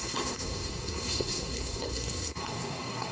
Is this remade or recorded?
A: remade